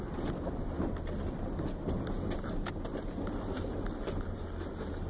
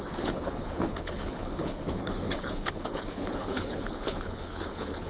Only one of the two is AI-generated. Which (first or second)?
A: second